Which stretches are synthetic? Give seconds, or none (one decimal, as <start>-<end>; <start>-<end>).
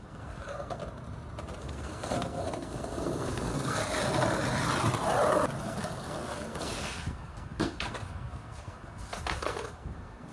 0.0-0.8; 1.6-3.8; 5.6-10.3